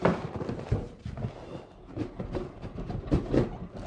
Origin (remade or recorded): recorded